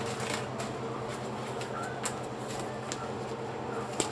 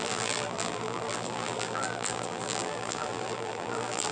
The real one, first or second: first